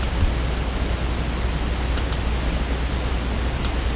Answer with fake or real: real